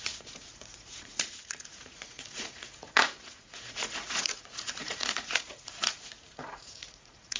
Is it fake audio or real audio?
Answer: fake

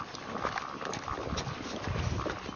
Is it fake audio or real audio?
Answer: real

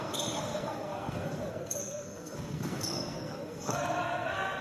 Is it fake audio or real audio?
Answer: fake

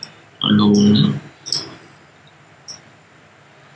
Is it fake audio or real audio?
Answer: real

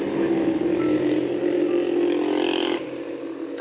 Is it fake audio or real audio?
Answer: real